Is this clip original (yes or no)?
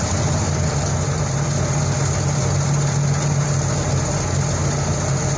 yes